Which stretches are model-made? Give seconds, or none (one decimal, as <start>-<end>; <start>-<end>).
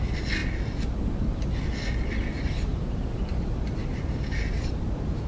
2.7-4.5